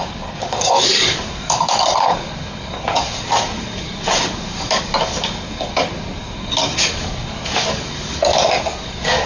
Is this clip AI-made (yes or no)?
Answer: yes